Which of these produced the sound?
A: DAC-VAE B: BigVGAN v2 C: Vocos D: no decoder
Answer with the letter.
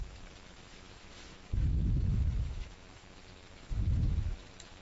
A